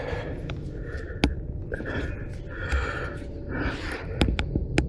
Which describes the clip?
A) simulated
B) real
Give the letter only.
B